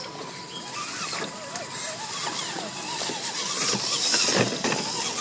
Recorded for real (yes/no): yes